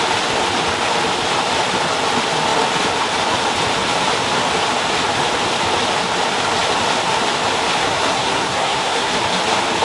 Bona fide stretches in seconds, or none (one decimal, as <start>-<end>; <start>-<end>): 0.0-7.8; 9.1-9.8